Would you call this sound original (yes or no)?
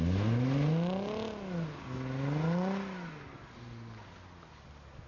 yes